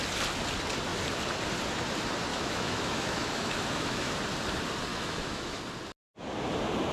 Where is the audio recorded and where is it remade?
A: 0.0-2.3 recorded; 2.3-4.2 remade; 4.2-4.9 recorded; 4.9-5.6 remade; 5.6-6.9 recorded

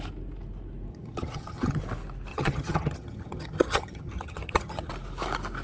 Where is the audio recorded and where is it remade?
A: 0.0-0.9 recorded; 0.9-1.8 remade; 1.8-2.3 recorded; 2.3-4.9 remade; 4.9-5.6 recorded

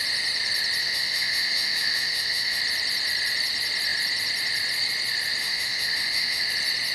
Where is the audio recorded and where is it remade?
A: 0.0-0.8 recorded; 0.8-2.6 remade; 2.6-5.4 recorded; 5.4-6.5 remade; 6.5-6.9 recorded

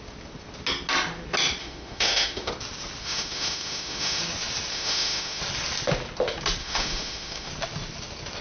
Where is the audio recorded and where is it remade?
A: 0.0-1.6 recorded; 1.6-2.5 remade; 2.5-3.0 recorded; 3.0-4.2 remade; 4.2-4.7 recorded; 4.7-5.4 remade; 5.4-6.6 recorded; 6.6-7.5 remade; 7.5-8.4 recorded

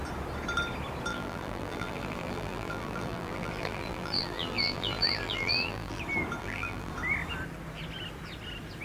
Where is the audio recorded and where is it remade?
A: 0.0-1.1 recorded; 1.1-6.0 remade; 6.0-6.4 recorded; 6.4-6.9 remade; 6.9-8.8 recorded

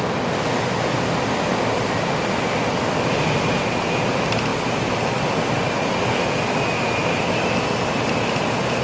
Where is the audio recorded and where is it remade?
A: 0.0-8.8 recorded